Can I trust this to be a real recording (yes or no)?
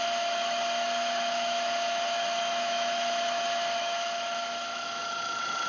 no